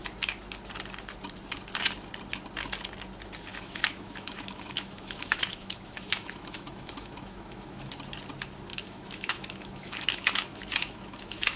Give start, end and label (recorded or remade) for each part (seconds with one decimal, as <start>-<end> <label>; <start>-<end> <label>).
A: 0.0-3.5 recorded; 3.5-7.9 remade; 7.9-8.7 recorded; 8.7-11.6 remade